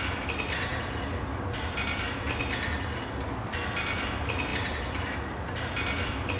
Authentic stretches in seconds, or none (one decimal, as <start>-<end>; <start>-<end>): 0.0-6.4